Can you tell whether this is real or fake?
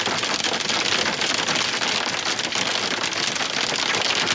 real